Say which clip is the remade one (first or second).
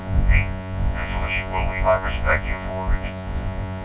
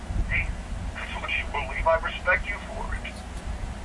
first